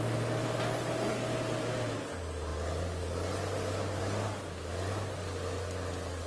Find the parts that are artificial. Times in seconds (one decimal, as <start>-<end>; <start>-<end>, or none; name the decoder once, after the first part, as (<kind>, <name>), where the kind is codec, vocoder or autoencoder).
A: none